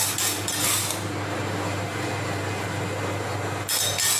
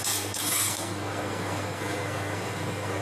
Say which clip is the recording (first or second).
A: first